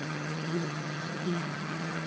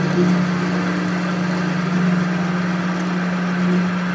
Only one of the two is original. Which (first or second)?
second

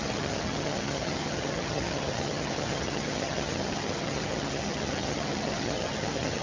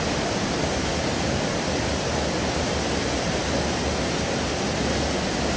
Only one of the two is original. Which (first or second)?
second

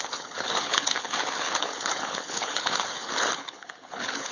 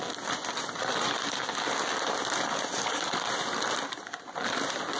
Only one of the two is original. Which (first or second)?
second